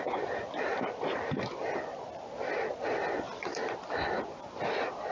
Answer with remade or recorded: recorded